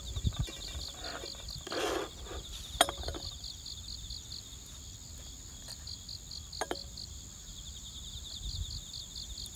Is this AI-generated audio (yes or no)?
no